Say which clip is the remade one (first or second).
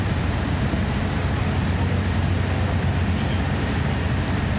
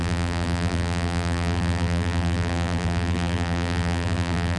second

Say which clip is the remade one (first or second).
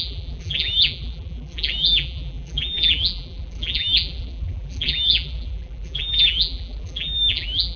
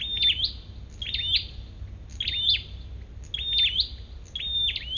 first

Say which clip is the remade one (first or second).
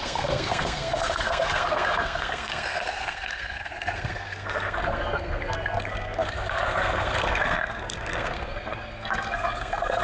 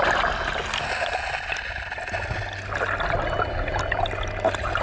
first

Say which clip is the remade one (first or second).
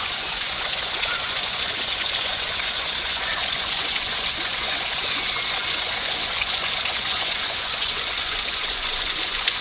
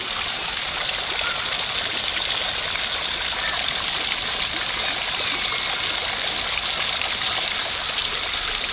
first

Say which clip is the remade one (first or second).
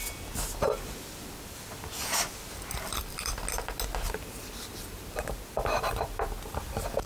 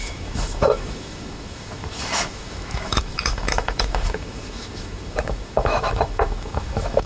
second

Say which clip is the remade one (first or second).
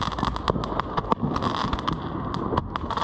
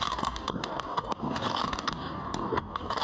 second